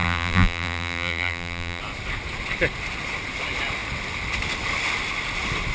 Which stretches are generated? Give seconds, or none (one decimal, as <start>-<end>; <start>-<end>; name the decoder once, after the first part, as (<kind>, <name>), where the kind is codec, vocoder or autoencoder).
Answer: 0.0-1.8 (vocoder, BigVGAN v2)